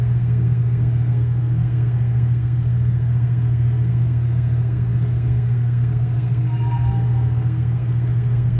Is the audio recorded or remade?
remade